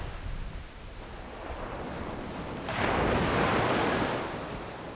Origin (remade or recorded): recorded